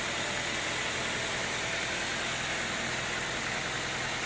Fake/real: real